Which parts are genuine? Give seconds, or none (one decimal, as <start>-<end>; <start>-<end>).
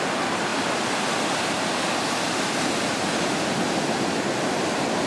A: 0.0-5.1